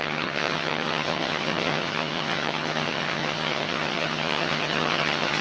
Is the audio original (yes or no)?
no